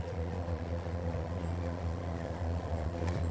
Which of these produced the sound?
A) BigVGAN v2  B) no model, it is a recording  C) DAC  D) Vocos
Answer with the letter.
D